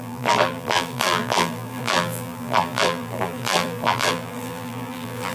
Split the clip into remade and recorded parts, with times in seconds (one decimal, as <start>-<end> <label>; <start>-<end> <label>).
0.0-5.3 remade